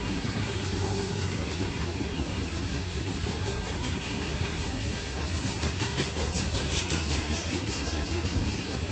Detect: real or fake fake